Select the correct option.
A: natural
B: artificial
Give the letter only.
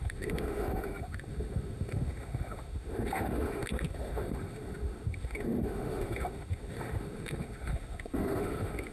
B